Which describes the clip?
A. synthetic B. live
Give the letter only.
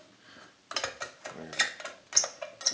B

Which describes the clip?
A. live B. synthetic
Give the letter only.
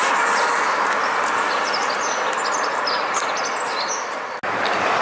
A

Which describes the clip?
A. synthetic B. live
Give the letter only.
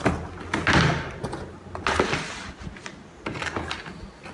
B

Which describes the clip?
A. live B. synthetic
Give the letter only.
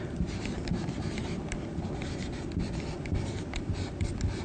A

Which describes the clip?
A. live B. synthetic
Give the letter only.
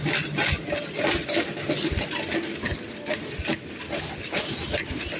A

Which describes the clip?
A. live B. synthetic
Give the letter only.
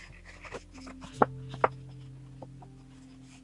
A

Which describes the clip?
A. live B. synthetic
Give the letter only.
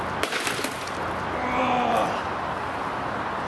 A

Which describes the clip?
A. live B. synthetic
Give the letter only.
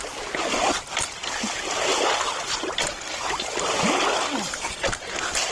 A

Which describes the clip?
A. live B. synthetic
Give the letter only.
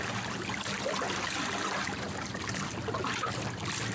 A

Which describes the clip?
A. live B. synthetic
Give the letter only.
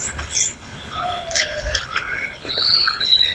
B